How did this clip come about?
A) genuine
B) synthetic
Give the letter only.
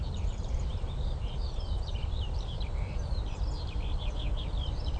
B